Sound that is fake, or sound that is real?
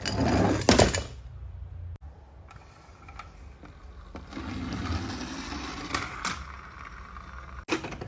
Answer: real